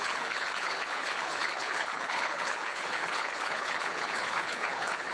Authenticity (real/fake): fake